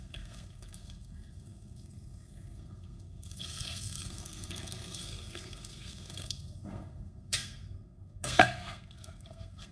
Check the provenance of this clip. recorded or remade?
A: remade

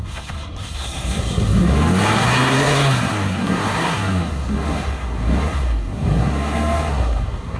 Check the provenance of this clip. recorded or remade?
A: remade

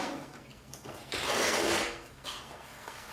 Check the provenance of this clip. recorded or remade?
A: remade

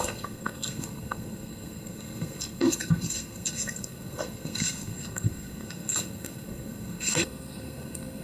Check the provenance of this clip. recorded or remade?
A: remade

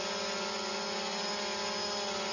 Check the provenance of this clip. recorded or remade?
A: recorded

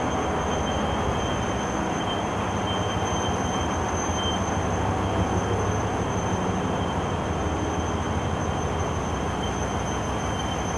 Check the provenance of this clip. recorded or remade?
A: recorded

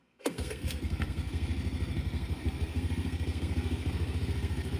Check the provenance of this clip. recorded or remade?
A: remade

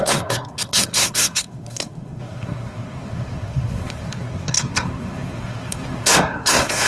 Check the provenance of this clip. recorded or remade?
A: remade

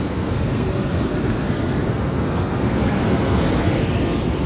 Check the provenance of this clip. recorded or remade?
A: remade